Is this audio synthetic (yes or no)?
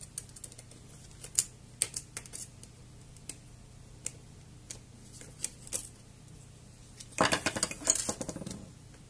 no